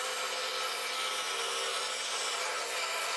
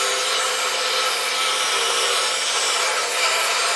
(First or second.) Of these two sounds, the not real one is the second